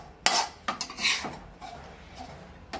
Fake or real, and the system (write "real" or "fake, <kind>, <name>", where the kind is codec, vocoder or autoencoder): real